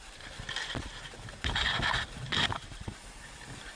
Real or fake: real